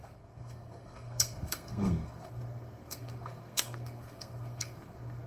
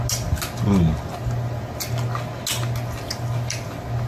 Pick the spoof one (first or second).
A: first